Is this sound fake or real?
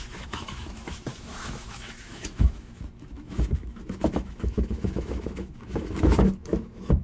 fake